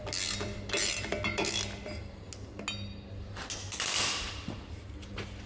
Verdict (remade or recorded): recorded